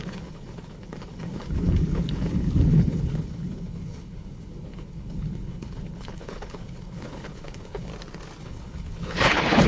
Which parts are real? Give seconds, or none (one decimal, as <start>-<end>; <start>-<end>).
7.9-8.4